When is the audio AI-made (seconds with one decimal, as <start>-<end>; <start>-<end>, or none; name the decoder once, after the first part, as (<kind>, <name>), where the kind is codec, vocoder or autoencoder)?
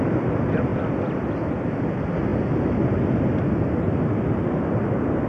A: 0.7-1.3 (vocoder, BigVGAN v2); 2.3-2.9